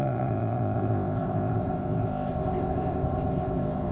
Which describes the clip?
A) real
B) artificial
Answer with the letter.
B